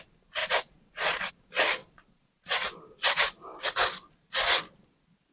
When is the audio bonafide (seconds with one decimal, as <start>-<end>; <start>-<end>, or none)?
0.0-0.4; 1.3-1.8; 2.6-5.3